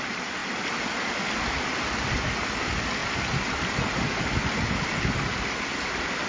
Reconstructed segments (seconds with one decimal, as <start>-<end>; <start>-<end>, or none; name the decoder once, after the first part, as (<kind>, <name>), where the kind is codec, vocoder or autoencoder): none